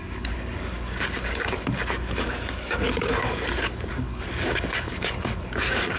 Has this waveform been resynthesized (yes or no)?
yes